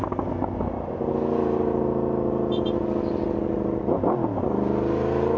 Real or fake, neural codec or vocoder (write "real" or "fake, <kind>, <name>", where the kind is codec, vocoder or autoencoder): real